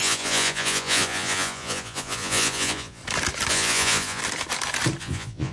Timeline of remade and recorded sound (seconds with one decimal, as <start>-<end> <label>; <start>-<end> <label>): 0.0-3.0 remade; 3.0-3.5 recorded; 3.5-4.2 remade; 4.2-5.0 recorded; 5.0-5.5 remade